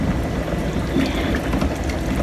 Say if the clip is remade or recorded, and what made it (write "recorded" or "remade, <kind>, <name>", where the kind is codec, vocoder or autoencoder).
recorded